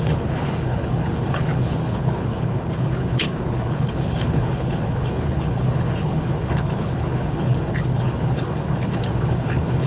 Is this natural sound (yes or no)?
no